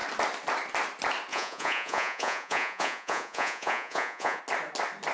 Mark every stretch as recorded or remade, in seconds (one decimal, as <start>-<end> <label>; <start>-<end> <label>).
0.0-1.3 recorded; 1.3-4.4 remade; 4.4-5.1 recorded